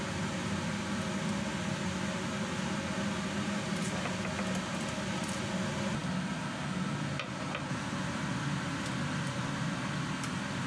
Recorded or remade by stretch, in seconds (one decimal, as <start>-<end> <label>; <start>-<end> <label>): 0.0-10.7 recorded